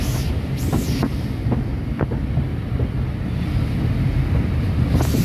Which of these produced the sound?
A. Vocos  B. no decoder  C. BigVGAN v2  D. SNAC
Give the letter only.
B